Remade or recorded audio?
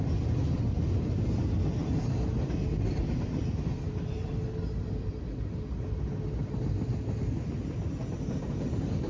recorded